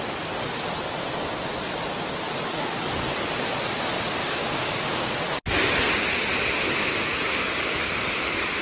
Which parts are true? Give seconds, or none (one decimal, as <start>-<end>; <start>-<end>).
0.0-4.2; 5.1-8.6